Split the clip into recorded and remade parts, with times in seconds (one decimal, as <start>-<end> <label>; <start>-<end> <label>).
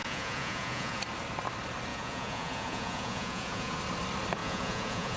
0.0-1.0 remade; 1.0-1.9 recorded; 1.9-3.8 remade; 3.8-4.4 recorded; 4.4-5.2 remade